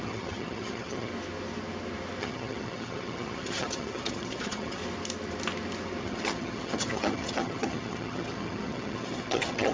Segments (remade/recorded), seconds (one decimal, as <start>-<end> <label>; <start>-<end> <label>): 0.0-1.1 remade; 1.1-2.2 recorded; 2.2-4.8 remade; 4.8-6.0 recorded; 6.0-9.7 remade